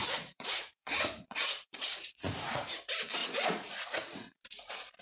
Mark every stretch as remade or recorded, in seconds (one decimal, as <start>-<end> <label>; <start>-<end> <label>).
0.0-2.7 remade; 2.7-3.2 recorded; 3.2-4.4 remade; 4.4-5.0 recorded